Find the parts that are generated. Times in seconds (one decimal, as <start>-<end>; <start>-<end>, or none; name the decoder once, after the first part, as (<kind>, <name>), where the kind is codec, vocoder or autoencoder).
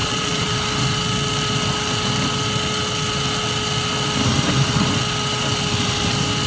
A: 0.0-0.5 (vocoder, Vocos)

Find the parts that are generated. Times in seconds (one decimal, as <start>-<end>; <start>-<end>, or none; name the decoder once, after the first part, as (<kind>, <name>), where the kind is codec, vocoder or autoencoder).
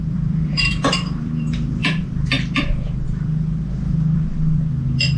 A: 0.0-5.2 (vocoder, BigVGAN v2)